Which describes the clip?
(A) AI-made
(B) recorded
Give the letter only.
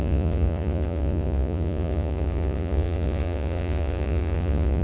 A